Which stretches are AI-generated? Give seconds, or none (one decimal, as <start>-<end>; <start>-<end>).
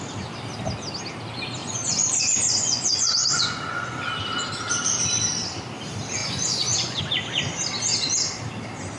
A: 1.6-4.0; 6.2-7.0